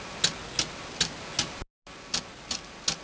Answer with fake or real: real